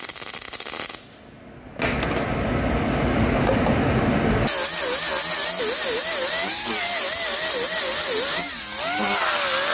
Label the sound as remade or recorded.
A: recorded